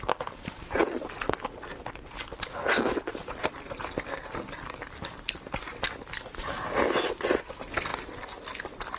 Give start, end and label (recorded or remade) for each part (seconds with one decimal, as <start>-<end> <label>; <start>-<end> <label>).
0.0-9.0 recorded